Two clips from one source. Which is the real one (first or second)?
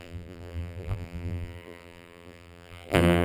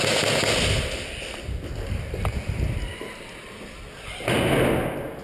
second